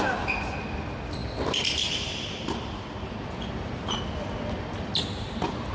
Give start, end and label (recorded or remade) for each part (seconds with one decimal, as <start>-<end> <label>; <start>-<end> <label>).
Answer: 0.0-5.7 recorded